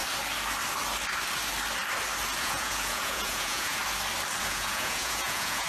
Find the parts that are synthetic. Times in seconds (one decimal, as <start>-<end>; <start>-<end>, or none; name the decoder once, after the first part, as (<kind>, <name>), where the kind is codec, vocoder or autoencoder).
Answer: 2.4-3.8 (vocoder, Vocos); 4.4-5.7